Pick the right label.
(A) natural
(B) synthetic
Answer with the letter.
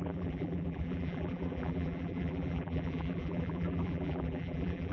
B